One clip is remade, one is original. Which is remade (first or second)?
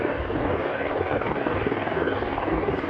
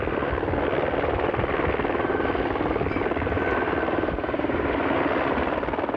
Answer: first